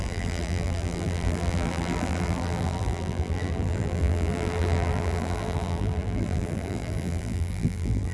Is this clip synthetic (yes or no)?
yes